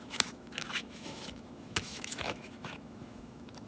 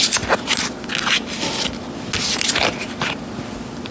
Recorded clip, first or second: second